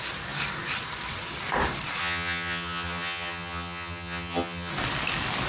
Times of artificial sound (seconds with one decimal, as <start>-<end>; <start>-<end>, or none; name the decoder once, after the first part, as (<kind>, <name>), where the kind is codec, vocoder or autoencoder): 2.0-4.7 (vocoder, HiFi-GAN)